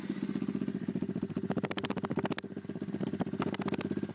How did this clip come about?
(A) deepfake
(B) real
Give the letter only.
B